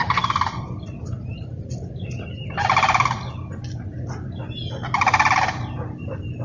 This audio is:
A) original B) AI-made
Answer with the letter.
A